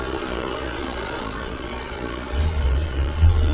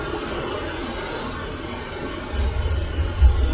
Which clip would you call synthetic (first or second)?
first